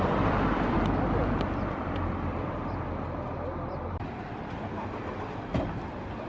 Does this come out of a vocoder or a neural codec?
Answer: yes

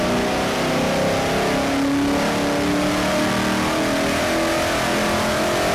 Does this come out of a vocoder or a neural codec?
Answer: no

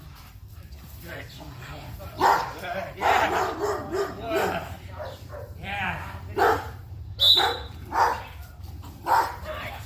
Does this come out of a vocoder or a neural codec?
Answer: yes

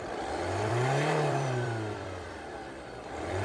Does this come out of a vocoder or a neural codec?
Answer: yes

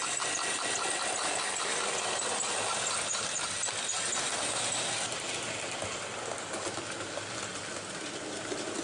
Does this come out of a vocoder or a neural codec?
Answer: no